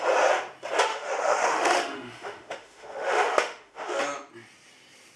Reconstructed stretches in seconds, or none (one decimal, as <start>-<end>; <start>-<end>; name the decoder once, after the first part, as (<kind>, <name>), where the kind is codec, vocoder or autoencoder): 0.9-4.0 (autoencoder, DAC-VAE)

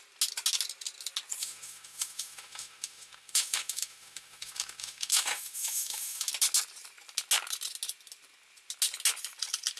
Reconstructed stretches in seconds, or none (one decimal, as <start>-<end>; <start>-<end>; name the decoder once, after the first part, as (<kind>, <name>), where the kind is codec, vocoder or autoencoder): 1.4-6.3 (autoencoder, DAC-VAE)

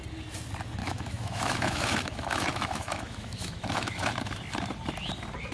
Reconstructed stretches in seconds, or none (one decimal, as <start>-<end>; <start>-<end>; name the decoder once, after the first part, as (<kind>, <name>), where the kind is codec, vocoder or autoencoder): 0.8-4.1 (autoencoder, DAC-VAE)

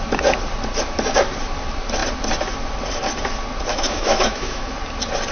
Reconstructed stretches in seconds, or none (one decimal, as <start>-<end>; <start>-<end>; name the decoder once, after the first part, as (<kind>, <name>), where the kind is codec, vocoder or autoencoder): 3.7-4.7 (autoencoder, DAC-VAE)

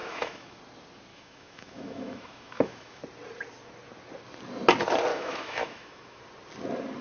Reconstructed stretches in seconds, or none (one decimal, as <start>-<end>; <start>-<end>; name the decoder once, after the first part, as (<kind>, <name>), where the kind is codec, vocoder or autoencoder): 0.0-0.6 (autoencoder, DAC-VAE); 1.1-3.0; 5.1-6.2

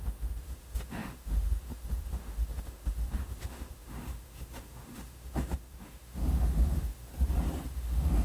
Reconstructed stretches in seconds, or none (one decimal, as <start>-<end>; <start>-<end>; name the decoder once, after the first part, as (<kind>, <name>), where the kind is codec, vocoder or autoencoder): 0.0-7.1 (autoencoder, DAC-VAE); 7.7-8.2